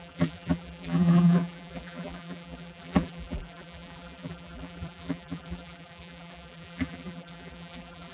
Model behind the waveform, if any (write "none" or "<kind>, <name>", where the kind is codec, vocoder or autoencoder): vocoder, BigVGAN v2